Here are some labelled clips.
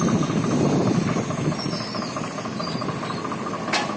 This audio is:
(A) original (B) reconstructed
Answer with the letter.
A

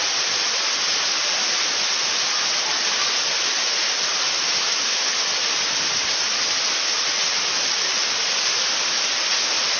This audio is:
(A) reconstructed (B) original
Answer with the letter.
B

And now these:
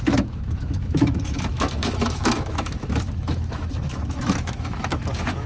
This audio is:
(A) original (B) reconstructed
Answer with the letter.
B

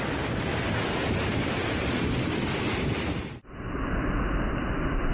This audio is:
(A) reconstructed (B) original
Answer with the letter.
B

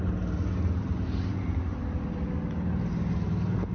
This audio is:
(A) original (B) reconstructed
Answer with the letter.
A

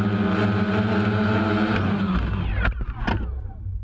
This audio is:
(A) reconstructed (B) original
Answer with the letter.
B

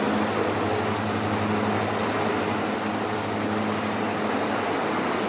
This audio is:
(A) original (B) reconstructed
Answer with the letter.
A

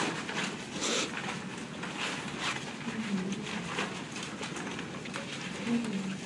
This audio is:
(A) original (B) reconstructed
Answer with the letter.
A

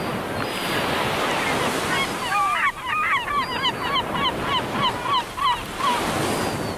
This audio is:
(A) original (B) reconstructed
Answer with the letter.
A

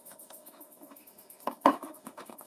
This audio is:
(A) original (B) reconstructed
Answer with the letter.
B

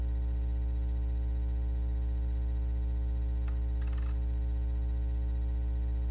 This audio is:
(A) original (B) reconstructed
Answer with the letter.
A